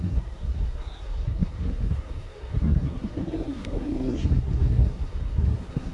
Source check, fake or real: fake